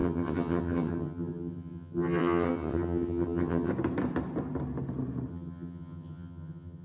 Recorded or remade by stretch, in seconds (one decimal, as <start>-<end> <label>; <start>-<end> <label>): 0.0-3.7 remade; 3.7-5.3 recorded; 5.3-6.8 remade